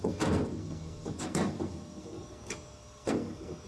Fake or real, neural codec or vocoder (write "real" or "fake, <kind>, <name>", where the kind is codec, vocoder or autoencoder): fake, codec, SNAC